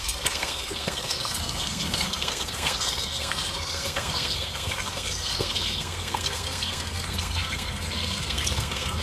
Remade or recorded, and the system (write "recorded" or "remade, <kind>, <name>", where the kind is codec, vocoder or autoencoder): remade, codec, SNAC